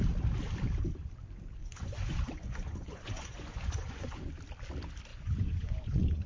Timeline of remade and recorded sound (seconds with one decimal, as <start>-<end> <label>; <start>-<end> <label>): 0.0-1.6 recorded; 1.6-4.4 remade; 4.4-5.1 recorded; 5.1-6.3 remade